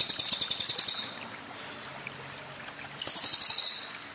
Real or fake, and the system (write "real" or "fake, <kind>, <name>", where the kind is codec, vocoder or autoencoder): real